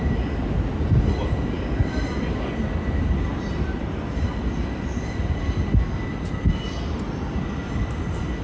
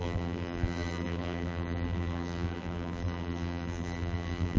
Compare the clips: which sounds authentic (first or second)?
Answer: first